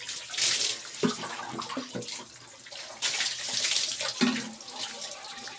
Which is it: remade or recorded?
recorded